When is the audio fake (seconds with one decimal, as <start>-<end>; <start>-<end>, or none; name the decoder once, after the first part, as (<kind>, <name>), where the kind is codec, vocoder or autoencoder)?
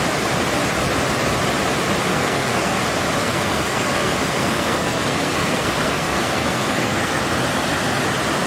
2.1-2.8 (codec, SNAC); 3.2-7.2